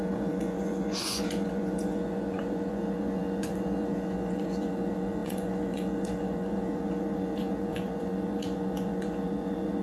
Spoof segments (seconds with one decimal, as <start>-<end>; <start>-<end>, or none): 0.0-9.8